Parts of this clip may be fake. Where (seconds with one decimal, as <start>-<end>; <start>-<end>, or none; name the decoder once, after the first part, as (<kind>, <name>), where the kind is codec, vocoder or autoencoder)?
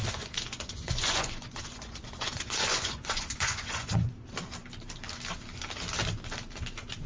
0.0-4.1 (vocoder, Vocos)